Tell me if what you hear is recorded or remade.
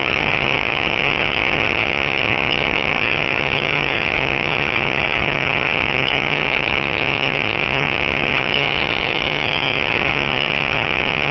remade